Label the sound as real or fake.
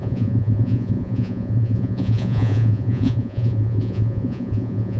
fake